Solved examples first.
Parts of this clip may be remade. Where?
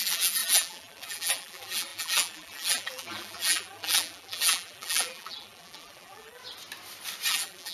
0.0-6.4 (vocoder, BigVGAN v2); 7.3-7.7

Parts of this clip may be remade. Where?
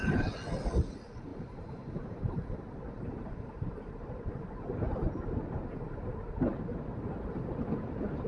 1.3-4.3 (vocoder, BigVGAN v2)